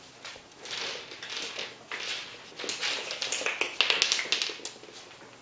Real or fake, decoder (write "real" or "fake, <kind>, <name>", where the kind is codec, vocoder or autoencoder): real